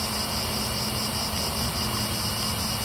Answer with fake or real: real